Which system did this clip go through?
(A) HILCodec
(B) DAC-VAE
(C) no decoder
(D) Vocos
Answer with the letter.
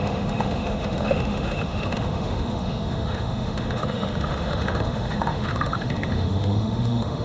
B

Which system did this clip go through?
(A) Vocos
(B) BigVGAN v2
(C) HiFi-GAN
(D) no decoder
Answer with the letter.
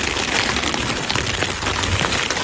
D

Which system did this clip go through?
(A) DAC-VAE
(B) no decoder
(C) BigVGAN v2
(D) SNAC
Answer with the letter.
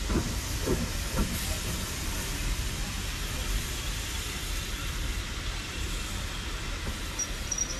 B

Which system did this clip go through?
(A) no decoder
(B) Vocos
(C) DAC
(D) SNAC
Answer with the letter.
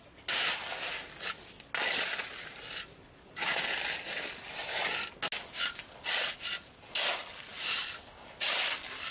A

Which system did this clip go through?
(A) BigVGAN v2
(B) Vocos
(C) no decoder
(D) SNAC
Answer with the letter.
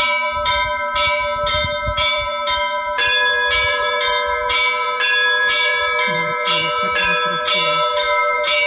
A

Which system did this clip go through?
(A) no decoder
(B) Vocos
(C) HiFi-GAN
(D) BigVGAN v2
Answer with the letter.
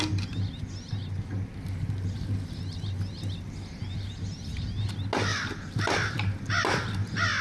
A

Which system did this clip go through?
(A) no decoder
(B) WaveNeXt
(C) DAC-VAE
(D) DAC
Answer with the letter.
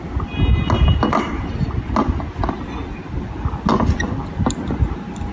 A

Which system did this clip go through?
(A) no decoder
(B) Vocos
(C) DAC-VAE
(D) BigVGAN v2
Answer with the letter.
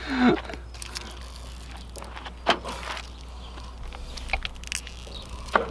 A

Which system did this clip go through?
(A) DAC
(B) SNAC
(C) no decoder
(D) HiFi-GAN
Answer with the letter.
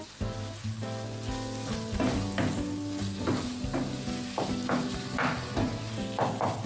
C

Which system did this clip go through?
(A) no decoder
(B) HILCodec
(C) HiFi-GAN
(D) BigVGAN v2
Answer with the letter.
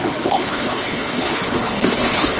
B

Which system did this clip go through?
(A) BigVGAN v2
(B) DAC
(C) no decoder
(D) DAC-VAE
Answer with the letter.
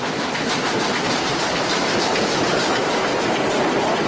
C